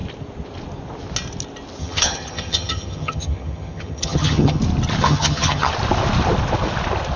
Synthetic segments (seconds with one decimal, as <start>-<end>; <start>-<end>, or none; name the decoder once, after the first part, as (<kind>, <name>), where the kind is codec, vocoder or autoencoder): 1.8-4.6 (vocoder, HiFi-GAN); 5.0-5.7